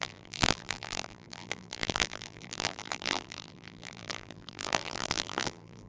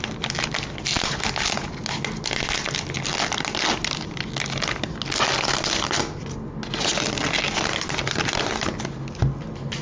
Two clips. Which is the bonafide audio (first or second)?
second